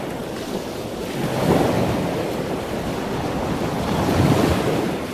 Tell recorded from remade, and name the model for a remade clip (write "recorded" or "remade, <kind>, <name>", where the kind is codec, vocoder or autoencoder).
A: recorded